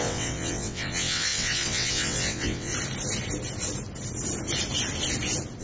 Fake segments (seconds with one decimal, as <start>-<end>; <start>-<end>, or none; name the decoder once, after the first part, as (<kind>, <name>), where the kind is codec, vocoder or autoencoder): 0.0-2.7 (vocoder, WaveNeXt)

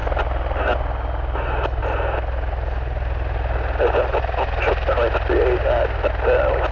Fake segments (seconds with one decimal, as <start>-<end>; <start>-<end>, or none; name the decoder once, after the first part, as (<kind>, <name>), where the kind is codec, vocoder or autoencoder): none

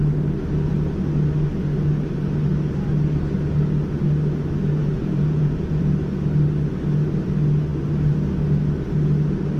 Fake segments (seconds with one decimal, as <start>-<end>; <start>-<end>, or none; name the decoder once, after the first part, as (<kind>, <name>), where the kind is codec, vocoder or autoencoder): 4.8-5.8 (vocoder, Vocos)

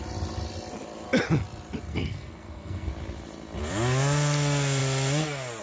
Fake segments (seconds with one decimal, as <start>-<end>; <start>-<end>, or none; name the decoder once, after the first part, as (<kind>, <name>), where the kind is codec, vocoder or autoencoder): 1.9-2.9 (codec, SNAC)

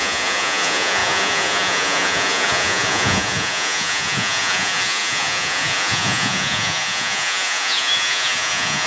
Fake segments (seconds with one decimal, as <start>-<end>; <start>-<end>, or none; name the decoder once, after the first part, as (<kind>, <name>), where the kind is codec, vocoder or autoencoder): 0.0-8.9 (vocoder, Vocos)

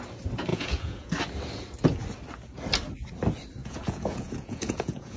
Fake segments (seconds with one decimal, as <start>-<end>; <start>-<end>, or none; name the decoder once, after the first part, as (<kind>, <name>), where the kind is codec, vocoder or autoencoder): 0.5-1.1 (vocoder, Vocos); 3.6-5.2

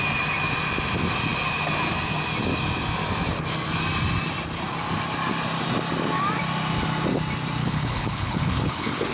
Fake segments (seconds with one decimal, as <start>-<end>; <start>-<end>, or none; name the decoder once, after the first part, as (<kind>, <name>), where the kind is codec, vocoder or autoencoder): 7.6-9.1 (codec, HILCodec)